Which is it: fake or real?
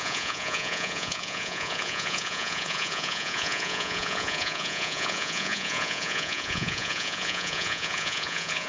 fake